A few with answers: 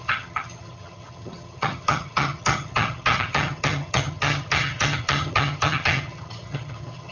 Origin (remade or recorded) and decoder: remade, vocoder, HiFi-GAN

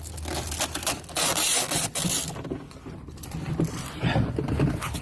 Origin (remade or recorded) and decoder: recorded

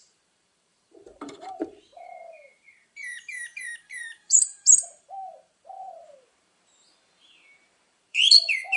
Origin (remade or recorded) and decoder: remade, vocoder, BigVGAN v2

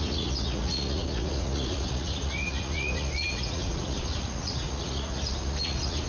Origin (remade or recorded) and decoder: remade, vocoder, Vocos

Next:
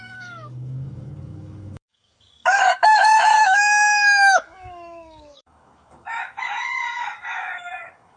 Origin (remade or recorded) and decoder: remade, codec, DAC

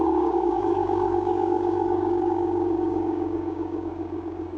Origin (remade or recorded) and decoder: remade, codec, DAC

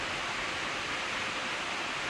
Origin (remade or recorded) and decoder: recorded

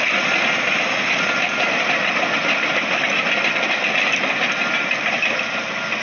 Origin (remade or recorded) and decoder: recorded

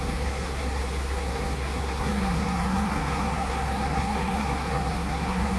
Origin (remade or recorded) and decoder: remade, codec, SNAC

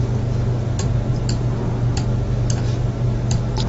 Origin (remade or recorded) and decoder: recorded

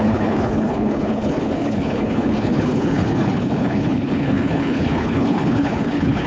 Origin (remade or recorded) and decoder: remade, codec, HILCodec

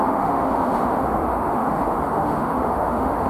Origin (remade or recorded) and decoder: remade, autoencoder, DAC-VAE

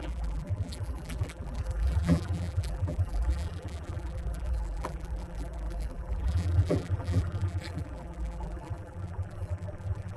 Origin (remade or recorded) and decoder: remade, vocoder, BigVGAN v2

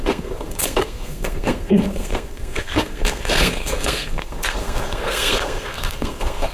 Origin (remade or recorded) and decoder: remade, codec, SNAC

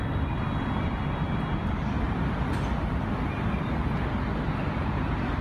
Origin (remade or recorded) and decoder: recorded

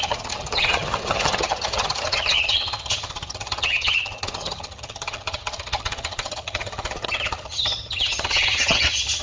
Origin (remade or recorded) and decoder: remade, vocoder, HiFi-GAN